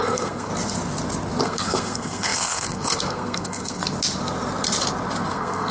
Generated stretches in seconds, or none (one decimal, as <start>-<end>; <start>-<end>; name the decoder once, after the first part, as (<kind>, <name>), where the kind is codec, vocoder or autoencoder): 0.0-0.5 (codec, SNAC); 1.4-3.8; 5.3-5.7